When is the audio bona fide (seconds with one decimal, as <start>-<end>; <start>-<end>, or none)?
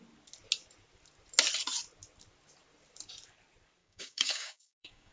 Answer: 0.0-3.8